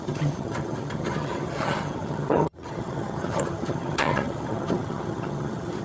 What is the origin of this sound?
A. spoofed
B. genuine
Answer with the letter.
A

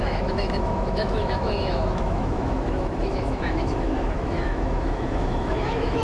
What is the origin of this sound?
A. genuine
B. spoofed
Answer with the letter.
B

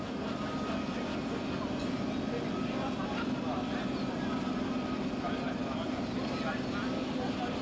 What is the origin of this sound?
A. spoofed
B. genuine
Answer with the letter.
B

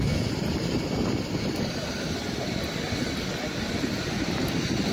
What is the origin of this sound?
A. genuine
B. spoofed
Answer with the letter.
A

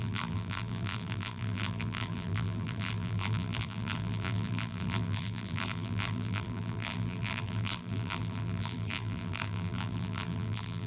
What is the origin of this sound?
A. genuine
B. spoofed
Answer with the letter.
B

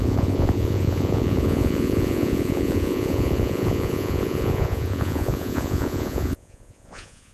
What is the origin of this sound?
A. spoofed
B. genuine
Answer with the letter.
A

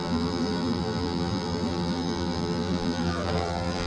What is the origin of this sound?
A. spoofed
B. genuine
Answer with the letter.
A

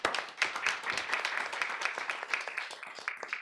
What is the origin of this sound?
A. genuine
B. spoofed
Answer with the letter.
B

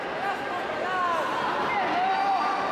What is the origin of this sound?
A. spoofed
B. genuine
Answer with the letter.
B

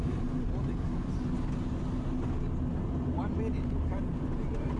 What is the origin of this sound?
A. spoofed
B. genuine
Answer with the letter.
B